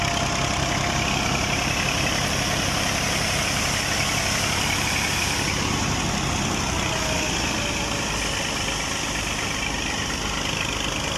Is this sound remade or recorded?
recorded